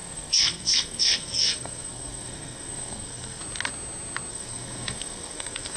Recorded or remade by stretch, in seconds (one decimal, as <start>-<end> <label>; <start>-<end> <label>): 0.0-3.4 remade; 3.4-4.3 recorded; 4.3-5.8 remade